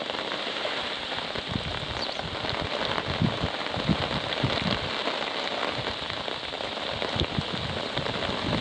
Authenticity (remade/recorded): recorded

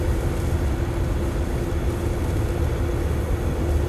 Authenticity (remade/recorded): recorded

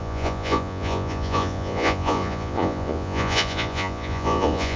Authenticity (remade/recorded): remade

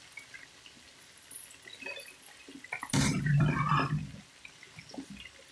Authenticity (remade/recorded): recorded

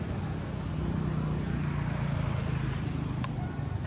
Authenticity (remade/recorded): recorded